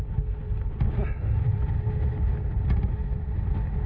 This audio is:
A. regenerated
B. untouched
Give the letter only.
B